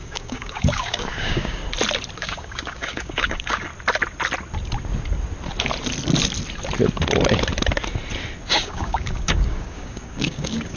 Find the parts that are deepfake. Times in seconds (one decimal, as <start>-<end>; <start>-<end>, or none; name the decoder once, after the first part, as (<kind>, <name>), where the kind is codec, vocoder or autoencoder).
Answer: 0.0-1.6 (codec, DAC); 2.2-3.7; 8.5-10.8